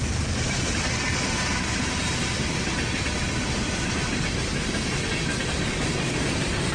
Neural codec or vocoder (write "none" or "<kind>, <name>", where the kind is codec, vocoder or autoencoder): vocoder, BigVGAN v2